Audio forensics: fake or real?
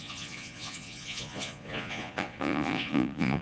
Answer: fake